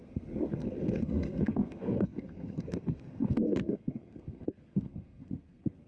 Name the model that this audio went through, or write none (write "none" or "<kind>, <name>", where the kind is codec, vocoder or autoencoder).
codec, SNAC